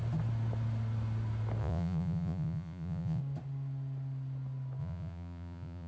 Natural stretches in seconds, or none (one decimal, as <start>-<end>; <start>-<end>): 0.0-1.6; 3.2-4.8